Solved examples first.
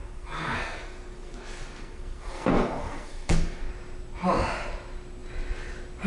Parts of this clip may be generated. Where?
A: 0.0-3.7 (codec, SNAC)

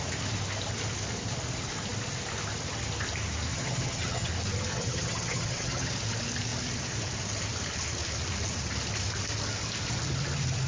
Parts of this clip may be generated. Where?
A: 3.5-4.3 (vocoder, HiFi-GAN); 4.7-5.9

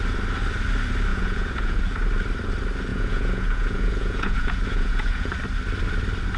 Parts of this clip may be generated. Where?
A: 1.1-1.8 (vocoder, Vocos); 2.9-5.3

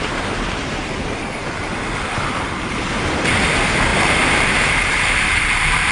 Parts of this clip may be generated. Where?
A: 3.9-5.9 (vocoder, BigVGAN v2)